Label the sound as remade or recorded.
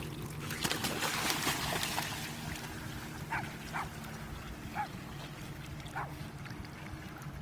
recorded